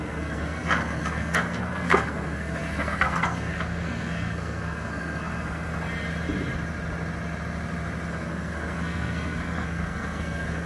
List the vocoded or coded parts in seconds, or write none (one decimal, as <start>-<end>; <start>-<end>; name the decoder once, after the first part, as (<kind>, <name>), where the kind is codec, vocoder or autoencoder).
0.0-5.7 (codec, SNAC); 8.1-10.7